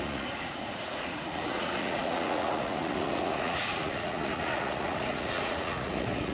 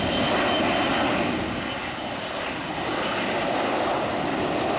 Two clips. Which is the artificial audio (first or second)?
first